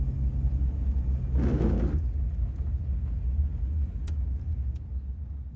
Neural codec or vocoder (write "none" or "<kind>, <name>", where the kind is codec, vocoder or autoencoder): none